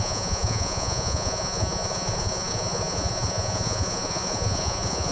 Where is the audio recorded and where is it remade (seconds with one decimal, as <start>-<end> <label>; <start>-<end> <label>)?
0.0-5.1 remade